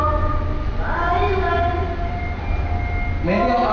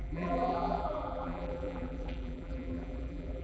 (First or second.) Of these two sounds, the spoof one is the second